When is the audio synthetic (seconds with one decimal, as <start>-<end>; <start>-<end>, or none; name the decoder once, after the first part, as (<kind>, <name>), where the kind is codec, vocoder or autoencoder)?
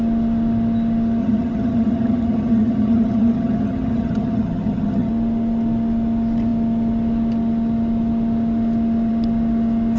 1.2-5.1 (vocoder, HiFi-GAN)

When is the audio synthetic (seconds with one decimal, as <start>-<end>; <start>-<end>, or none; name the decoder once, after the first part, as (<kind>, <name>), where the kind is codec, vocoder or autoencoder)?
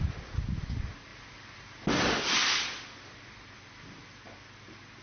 none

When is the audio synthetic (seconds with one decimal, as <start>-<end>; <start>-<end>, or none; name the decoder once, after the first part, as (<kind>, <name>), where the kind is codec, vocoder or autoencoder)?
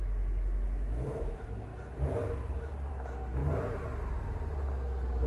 0.0-1.7 (autoencoder, DAC-VAE); 2.9-3.4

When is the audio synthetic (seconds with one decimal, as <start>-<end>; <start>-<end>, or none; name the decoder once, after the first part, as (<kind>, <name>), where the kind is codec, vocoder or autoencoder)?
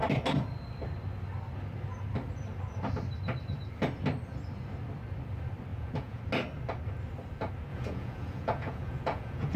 5.7-6.2 (vocoder, Vocos); 7.7-9.6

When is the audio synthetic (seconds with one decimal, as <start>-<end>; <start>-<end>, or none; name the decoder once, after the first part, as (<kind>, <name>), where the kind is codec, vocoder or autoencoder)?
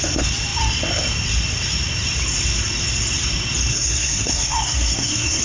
3.7-5.4 (codec, SNAC)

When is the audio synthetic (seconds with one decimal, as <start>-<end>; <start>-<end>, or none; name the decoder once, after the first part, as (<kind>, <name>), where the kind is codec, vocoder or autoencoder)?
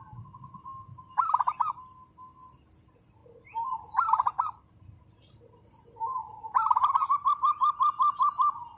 none